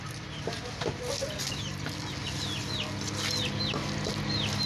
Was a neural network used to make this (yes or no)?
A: no